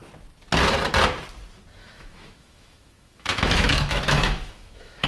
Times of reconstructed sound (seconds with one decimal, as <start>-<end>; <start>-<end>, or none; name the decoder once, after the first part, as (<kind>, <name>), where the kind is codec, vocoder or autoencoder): 1.8-5.1 (autoencoder, DAC-VAE)